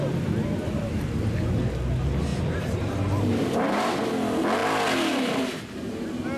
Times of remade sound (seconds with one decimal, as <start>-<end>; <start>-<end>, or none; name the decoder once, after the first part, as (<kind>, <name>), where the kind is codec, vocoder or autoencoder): 2.3-2.9 (vocoder, BigVGAN v2); 3.3-3.9

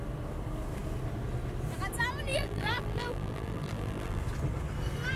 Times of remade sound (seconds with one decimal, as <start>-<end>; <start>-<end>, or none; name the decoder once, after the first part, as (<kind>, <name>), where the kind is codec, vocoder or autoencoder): 2.3-4.2 (vocoder, BigVGAN v2)

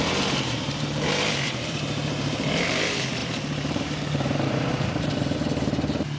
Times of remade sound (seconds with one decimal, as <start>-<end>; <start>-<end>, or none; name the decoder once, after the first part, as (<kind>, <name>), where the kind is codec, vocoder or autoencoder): 0.0-6.2 (vocoder, BigVGAN v2)

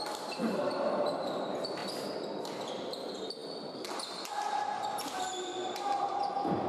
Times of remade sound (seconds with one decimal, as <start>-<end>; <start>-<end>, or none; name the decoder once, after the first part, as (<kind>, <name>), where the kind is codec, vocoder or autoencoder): 0.0-1.8 (vocoder, BigVGAN v2); 2.4-6.7

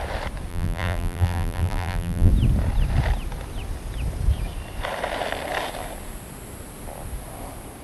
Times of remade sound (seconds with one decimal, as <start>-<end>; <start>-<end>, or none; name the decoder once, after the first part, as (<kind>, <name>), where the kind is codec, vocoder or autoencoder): 0.5-2.3 (vocoder, BigVGAN v2)

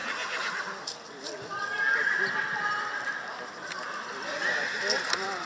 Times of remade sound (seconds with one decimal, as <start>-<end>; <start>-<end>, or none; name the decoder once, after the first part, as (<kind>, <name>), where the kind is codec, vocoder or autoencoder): none

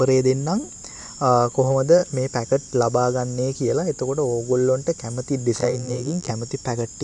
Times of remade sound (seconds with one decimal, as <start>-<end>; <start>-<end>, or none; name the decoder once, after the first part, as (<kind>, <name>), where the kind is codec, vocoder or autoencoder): 5.6-6.3 (vocoder, BigVGAN v2)

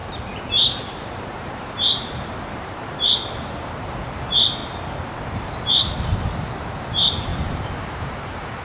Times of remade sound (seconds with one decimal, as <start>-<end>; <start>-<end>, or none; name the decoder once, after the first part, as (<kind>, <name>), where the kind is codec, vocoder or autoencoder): 0.0-4.6 (vocoder, BigVGAN v2); 5.2-8.6